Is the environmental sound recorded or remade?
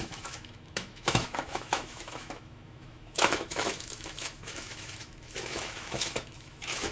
remade